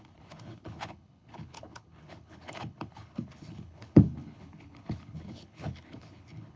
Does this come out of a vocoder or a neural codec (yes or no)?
yes